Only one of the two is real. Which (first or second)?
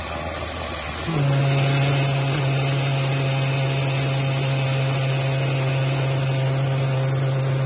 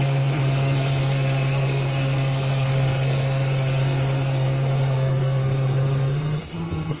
first